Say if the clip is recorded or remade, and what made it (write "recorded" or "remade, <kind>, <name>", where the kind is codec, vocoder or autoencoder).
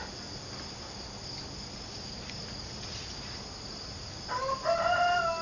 recorded